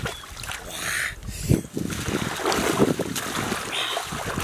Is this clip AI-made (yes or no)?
no